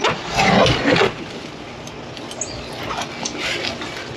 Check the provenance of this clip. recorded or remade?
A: recorded